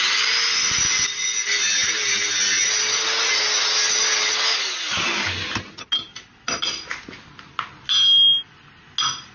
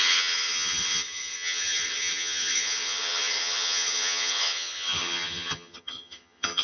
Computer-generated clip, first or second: second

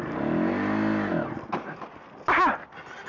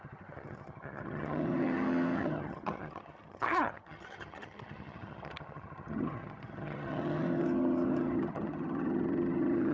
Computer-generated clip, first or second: second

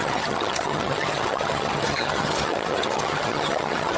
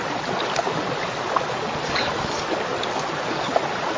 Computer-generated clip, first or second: first